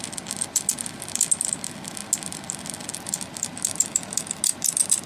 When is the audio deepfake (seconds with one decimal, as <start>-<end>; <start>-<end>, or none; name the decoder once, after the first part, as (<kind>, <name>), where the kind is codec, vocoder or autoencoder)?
none